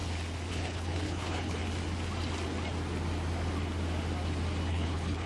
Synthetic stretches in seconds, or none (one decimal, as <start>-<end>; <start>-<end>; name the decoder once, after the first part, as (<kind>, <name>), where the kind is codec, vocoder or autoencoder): 0.5-1.6 (codec, HILCodec); 4.7-5.3